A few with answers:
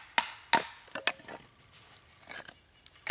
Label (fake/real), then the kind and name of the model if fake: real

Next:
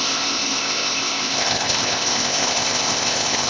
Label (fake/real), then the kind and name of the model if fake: fake, codec, ZipCodec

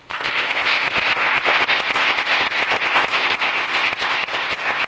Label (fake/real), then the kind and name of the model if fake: fake, codec, ZipCodec